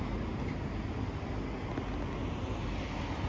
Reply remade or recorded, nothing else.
recorded